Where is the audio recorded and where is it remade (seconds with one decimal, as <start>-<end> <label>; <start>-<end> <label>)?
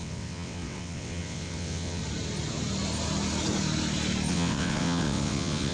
0.0-2.0 remade; 2.0-4.3 recorded; 4.3-5.7 remade